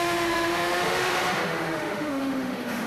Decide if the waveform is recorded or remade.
remade